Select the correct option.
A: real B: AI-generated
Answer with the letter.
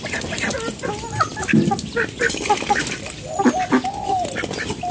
A